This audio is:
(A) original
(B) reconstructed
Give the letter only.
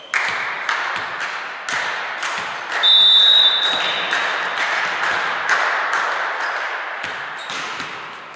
A